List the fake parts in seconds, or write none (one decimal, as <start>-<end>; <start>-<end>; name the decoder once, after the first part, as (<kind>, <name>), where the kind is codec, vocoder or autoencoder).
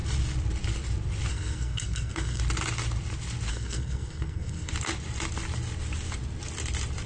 1.3-2.4 (codec, SNAC); 3.5-4.7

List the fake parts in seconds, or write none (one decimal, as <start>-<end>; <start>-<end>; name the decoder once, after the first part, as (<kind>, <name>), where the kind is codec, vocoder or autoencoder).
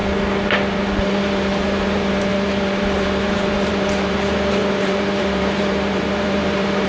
1.0-6.9 (vocoder, BigVGAN v2)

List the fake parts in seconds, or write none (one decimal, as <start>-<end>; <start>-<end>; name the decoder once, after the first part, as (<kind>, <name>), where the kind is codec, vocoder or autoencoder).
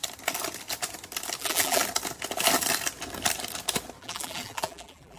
1.4-1.8 (vocoder, BigVGAN v2); 4.0-5.2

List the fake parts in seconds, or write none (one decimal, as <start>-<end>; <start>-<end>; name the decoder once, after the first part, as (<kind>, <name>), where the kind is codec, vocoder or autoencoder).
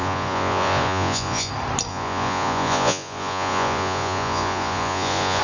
0.0-1.5 (vocoder, Vocos); 1.9-5.4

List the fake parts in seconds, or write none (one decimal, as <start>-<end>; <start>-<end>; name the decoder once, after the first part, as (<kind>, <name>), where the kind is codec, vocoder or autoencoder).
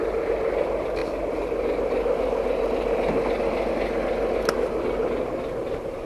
5.6-6.1 (vocoder, BigVGAN v2)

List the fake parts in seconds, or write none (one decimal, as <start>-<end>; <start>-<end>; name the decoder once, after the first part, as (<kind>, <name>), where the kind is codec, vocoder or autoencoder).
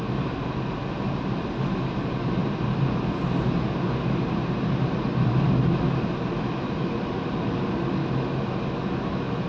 8.0-9.5 (autoencoder, DAC-VAE)